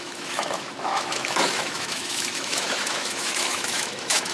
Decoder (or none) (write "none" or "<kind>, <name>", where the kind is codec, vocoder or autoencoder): autoencoder, DAC-VAE